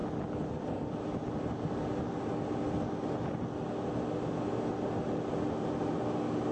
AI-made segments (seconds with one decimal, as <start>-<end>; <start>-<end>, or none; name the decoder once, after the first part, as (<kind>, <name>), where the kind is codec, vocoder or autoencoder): none